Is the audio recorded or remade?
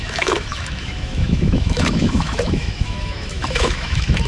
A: remade